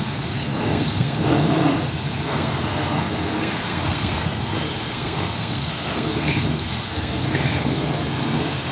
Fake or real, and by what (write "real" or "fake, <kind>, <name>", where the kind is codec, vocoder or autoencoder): fake, codec, SNAC